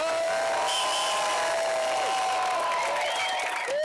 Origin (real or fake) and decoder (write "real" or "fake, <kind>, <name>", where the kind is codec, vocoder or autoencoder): real